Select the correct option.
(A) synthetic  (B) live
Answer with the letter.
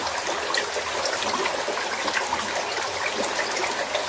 B